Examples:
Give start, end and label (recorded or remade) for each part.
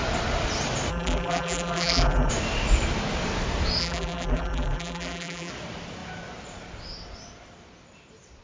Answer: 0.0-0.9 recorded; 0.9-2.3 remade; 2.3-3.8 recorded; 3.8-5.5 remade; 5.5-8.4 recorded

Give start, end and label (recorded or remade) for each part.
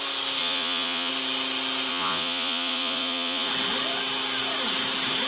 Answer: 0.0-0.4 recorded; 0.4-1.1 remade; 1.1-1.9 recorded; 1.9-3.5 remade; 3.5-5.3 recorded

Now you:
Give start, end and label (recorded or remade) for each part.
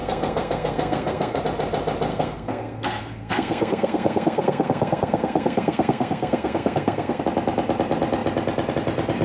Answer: 0.0-1.4 remade; 1.4-2.1 recorded; 2.1-7.2 remade; 7.2-9.2 recorded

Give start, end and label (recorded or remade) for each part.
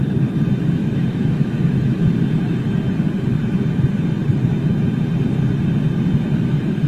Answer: 0.0-0.8 recorded; 0.8-2.0 remade; 2.0-6.9 recorded